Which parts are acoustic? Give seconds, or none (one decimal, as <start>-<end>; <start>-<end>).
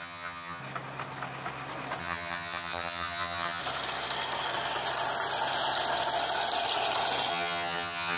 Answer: 0.6-2.0; 3.6-7.3